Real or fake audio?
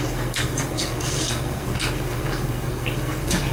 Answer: fake